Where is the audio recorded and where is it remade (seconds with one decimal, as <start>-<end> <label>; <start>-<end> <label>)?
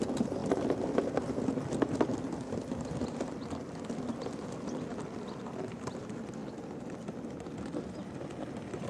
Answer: 0.0-8.9 recorded